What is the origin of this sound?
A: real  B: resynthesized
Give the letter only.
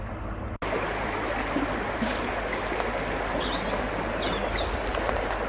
A